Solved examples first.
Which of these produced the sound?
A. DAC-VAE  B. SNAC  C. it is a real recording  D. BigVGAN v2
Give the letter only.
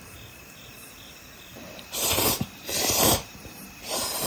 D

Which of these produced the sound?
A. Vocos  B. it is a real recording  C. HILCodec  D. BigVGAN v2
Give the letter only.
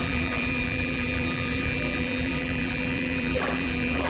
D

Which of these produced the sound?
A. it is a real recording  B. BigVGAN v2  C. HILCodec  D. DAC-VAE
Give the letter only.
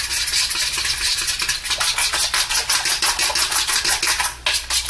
A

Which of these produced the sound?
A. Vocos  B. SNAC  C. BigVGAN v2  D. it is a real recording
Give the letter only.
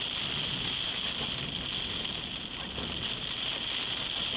D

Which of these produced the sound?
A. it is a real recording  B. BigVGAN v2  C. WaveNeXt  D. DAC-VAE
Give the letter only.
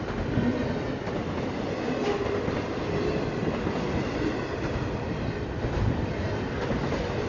B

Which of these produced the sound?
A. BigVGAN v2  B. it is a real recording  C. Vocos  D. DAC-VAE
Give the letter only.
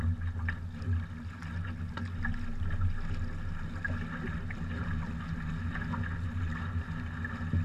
B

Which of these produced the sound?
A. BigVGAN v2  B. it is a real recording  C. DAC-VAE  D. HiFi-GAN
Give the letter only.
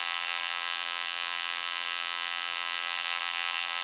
A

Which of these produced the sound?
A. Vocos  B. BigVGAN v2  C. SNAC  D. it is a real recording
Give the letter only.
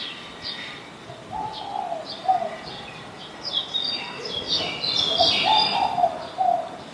D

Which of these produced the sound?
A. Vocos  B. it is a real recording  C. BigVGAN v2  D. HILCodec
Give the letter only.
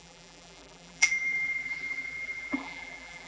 C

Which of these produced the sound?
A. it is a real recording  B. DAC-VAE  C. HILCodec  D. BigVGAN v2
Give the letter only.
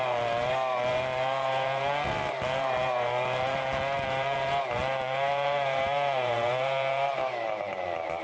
D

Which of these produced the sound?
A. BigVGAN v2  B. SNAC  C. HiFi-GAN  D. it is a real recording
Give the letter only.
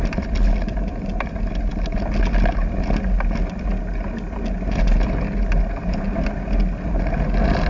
D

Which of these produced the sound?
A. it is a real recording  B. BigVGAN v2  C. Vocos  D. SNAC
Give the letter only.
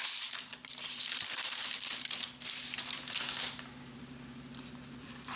B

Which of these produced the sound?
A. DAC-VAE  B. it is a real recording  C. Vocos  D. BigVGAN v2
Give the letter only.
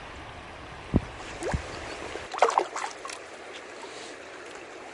B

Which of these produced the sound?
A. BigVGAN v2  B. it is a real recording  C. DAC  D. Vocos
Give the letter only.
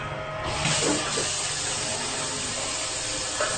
B